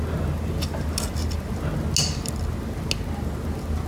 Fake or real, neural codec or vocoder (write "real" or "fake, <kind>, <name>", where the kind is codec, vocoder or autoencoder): real